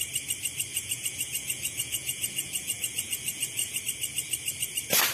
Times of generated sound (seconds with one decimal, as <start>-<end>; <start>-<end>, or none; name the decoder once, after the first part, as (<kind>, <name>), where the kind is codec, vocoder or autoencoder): 0.7-3.8 (vocoder, Vocos)